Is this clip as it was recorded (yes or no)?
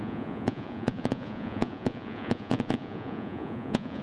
no